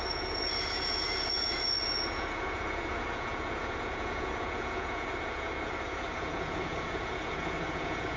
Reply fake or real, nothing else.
fake